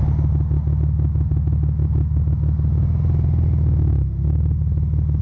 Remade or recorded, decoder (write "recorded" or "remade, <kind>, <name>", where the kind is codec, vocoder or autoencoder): recorded